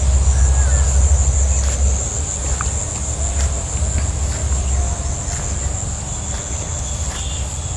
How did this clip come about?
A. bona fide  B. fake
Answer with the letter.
A